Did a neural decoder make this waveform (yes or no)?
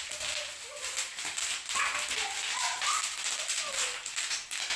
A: no